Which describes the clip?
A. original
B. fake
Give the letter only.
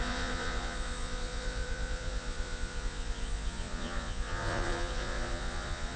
B